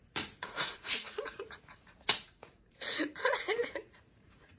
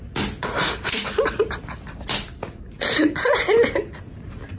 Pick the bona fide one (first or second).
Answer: second